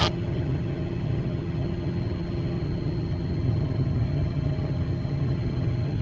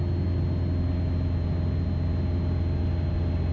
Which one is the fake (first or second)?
first